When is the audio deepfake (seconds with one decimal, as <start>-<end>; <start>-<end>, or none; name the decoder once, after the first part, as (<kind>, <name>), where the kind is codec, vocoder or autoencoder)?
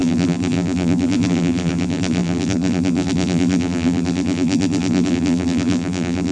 0.0-6.3 (vocoder, BigVGAN v2)